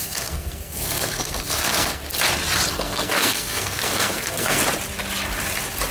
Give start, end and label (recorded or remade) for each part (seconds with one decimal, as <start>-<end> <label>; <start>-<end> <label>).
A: 0.0-2.0 remade; 2.0-2.7 recorded; 2.7-4.6 remade; 4.6-5.9 recorded